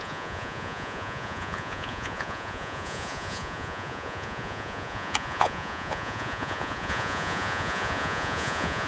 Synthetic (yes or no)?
yes